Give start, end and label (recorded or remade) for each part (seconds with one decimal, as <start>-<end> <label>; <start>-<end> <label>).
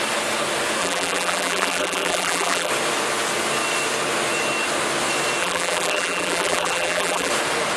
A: 0.0-0.8 recorded; 0.8-2.7 remade; 2.7-5.4 recorded; 5.4-7.3 remade; 7.3-7.8 recorded